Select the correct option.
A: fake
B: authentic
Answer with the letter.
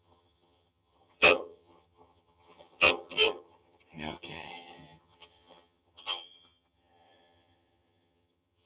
A